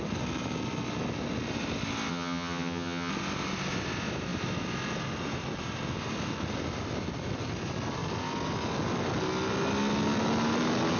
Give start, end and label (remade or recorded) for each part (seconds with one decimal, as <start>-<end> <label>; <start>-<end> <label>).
0.0-2.1 recorded; 2.1-3.1 remade; 3.1-11.0 recorded